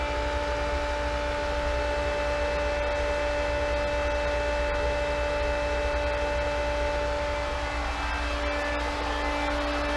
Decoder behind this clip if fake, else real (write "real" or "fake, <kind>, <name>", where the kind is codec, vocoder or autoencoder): real